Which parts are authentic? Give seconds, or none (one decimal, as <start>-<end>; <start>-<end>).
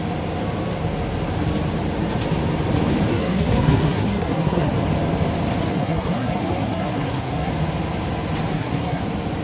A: 0.0-3.1; 4.7-5.7; 7.5-8.5; 9.0-9.4